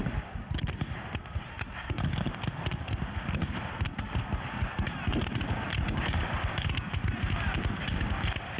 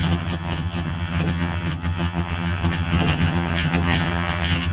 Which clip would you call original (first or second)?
first